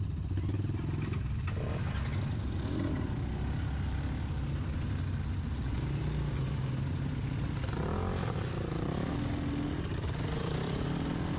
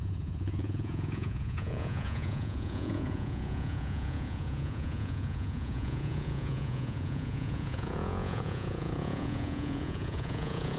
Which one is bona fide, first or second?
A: first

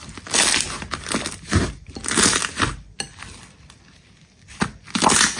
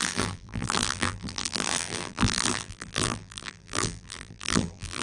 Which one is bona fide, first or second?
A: first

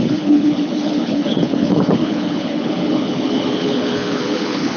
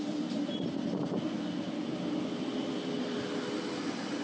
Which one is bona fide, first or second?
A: second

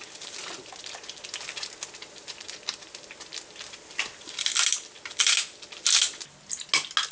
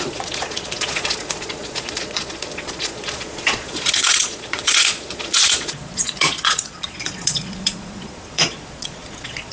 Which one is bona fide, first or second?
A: first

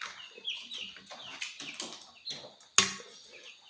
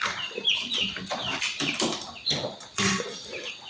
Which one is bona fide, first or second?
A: first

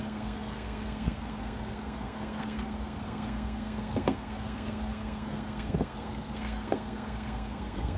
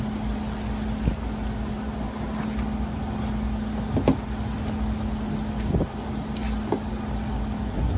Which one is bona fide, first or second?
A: second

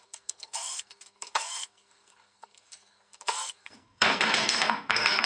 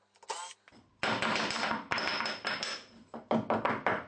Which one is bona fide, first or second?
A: second